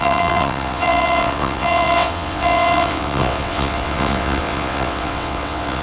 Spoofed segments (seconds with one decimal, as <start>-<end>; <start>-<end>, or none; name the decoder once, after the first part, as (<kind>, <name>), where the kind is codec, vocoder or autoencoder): 0.0-5.8 (vocoder, WaveNeXt)